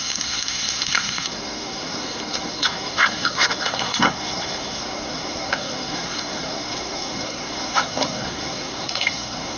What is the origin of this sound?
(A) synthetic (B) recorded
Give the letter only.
A